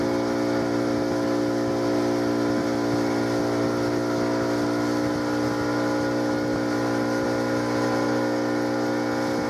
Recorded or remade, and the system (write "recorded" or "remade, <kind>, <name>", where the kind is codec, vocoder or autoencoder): recorded